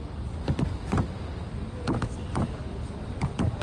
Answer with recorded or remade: recorded